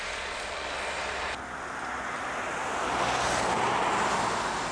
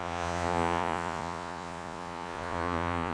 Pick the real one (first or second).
first